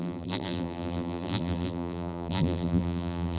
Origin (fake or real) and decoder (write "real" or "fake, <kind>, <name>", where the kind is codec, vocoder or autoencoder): fake, vocoder, BigVGAN v2